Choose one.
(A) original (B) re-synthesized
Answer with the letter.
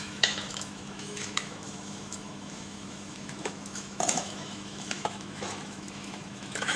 B